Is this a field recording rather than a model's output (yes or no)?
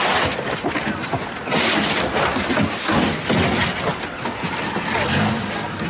yes